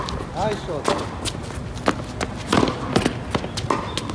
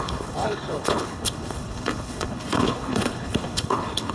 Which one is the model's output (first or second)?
second